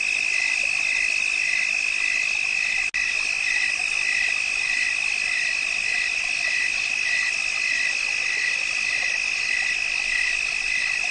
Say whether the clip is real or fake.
real